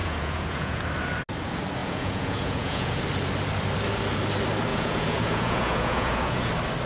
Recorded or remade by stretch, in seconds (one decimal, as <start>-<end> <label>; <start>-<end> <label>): 0.0-0.8 remade; 0.8-1.8 recorded; 1.8-3.0 remade; 3.0-4.7 recorded; 4.7-6.5 remade; 6.5-6.9 recorded